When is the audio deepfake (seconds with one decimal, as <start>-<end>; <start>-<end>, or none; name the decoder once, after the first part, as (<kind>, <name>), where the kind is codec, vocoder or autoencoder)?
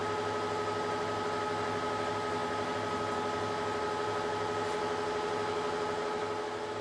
none